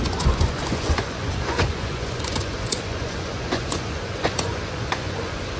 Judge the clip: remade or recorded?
remade